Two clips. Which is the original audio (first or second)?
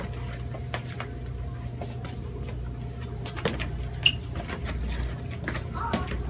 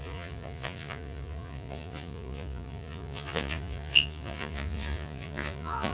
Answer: first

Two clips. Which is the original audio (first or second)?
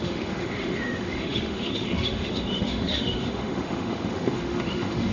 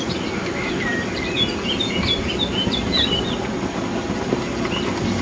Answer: second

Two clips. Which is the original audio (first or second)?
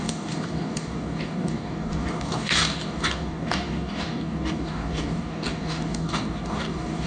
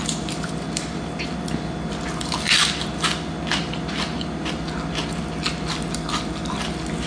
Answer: second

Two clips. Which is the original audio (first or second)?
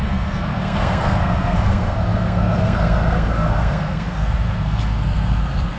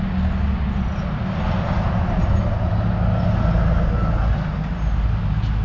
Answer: second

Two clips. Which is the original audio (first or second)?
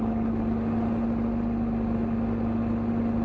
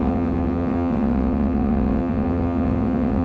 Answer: first